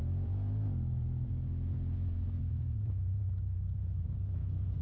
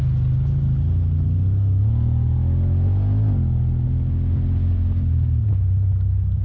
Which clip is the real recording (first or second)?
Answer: second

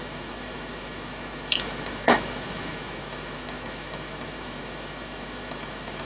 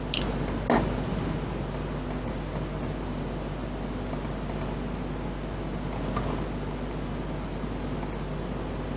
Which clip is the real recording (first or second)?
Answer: second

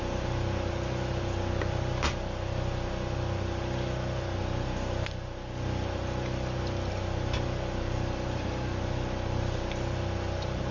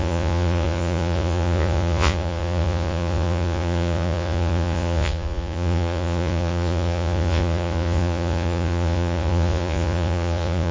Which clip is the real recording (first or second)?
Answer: first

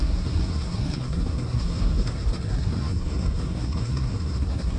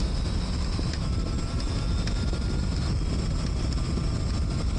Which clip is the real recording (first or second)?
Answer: second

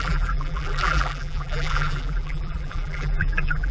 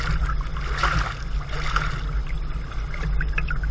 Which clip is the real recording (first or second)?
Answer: second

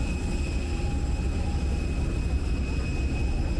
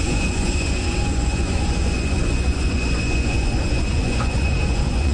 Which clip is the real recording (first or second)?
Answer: first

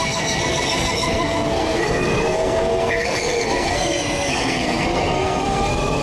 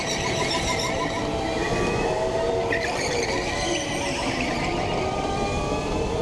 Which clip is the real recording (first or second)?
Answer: second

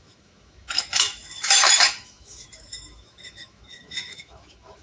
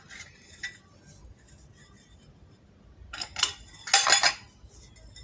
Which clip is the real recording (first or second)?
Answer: second